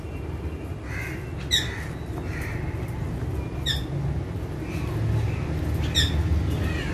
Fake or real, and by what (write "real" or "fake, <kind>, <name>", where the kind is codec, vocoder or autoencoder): real